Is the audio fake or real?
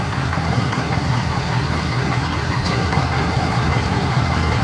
fake